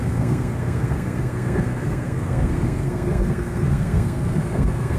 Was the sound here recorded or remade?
remade